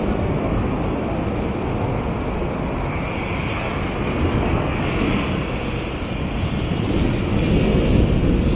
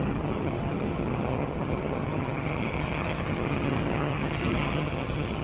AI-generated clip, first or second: second